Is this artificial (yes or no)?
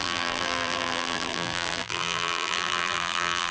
yes